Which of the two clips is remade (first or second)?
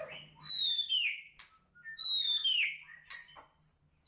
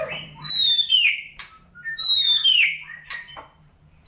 second